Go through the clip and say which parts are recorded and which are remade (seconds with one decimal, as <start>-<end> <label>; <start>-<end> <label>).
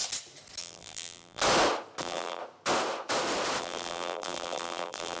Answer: 0.0-0.6 recorded; 0.6-1.4 remade; 1.4-2.0 recorded; 2.0-2.4 remade; 2.4-3.6 recorded; 3.6-5.2 remade